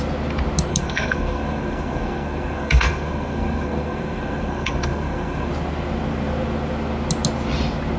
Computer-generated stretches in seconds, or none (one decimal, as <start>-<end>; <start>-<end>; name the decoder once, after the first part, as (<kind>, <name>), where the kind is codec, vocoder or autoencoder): 0.7-5.5 (codec, SNAC)